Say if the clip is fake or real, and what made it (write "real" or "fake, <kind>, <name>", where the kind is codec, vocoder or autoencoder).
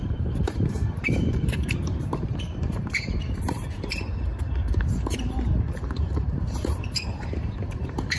fake, vocoder, BigVGAN v2